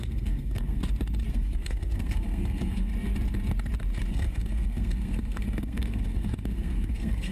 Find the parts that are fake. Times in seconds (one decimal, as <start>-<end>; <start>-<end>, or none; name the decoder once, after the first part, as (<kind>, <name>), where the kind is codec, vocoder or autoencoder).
0.0-0.8 (codec, SNAC); 1.3-2.9; 4.1-7.3